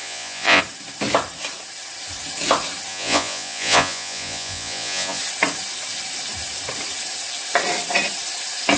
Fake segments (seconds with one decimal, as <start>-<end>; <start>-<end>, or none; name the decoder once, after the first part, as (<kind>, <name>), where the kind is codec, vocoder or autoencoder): 0.0-0.6 (vocoder, Vocos); 2.9-5.2